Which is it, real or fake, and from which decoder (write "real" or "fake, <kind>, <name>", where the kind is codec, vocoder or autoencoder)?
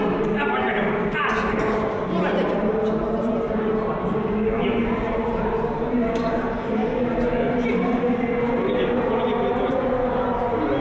real